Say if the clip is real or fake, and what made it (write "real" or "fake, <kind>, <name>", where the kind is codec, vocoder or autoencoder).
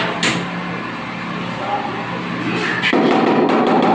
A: real